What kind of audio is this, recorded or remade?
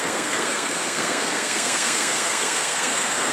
remade